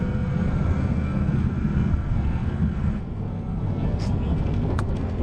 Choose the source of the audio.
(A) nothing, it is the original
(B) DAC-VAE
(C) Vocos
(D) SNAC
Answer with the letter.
D